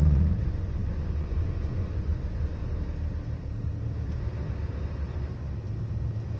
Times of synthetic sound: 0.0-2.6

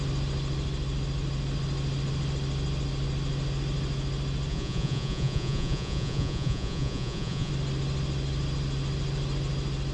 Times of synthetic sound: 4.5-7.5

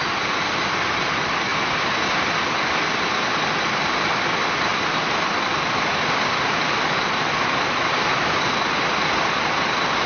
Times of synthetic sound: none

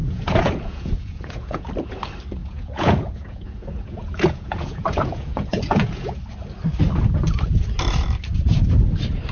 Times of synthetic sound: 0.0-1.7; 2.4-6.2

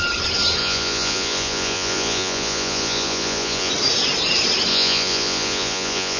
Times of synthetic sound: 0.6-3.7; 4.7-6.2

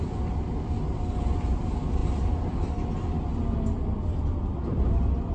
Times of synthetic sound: none